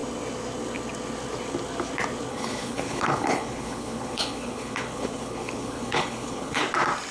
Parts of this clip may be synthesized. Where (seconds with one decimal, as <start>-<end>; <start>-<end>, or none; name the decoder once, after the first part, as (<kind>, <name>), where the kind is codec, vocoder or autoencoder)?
2.3-6.6 (codec, HILCodec)